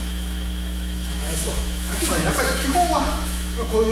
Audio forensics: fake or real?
fake